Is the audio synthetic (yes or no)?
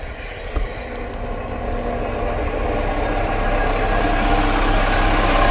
no